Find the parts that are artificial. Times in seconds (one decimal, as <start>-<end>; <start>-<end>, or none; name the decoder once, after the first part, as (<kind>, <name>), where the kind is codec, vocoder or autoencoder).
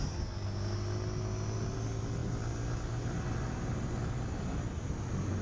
none